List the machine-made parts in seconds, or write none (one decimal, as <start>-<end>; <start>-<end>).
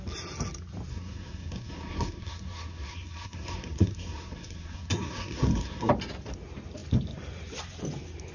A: 0.9-5.9